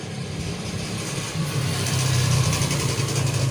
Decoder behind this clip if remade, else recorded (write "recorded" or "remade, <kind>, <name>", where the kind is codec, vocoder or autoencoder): remade, vocoder, BigVGAN v2